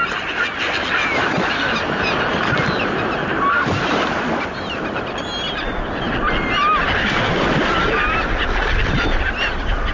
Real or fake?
real